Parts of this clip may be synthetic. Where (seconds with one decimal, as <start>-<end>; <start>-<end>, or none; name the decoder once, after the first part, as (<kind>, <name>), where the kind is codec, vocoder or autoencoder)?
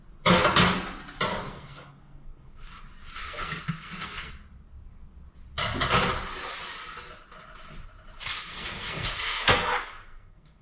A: 1.5-2.7 (codec, SNAC); 3.2-4.3; 8.3-10.6